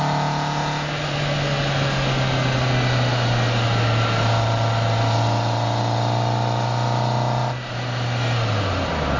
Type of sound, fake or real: real